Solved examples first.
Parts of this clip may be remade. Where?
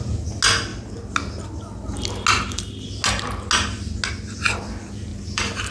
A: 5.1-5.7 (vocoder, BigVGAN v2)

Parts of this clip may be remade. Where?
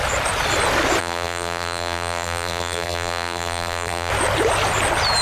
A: 1.0-4.1 (vocoder, BigVGAN v2)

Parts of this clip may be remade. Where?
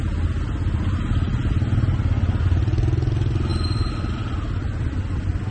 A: none